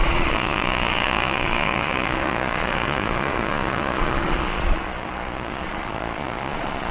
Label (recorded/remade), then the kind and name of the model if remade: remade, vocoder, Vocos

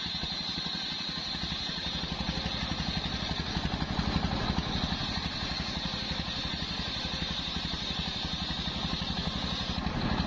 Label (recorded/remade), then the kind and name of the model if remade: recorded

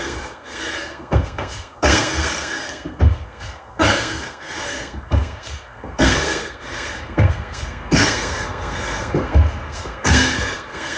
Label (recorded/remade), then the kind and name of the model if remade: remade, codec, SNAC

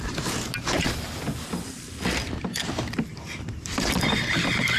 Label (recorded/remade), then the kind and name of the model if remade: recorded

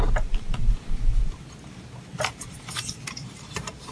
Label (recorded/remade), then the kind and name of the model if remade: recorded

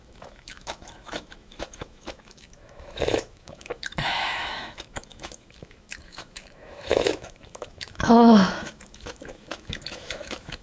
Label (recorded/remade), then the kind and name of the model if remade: remade, autoencoder, DAC-VAE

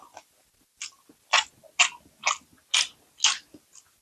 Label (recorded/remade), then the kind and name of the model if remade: recorded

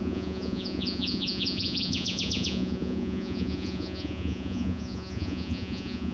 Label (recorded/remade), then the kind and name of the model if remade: remade, vocoder, Vocos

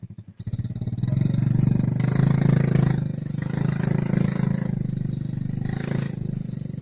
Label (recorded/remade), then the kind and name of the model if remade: recorded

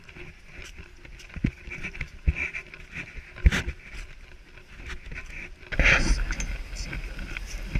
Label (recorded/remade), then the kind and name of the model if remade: recorded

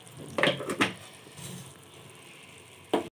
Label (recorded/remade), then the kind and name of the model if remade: recorded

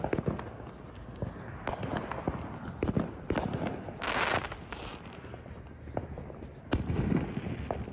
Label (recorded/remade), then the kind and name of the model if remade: recorded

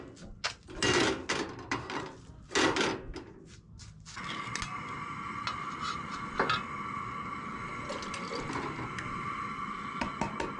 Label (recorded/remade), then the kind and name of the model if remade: recorded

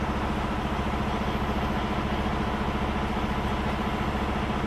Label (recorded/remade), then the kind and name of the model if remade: recorded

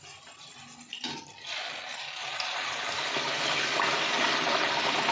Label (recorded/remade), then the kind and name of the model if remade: recorded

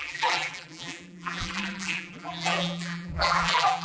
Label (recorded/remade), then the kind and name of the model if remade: remade, vocoder, BigVGAN v2